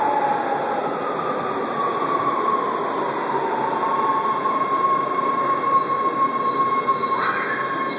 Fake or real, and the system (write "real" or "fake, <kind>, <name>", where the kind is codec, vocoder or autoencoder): real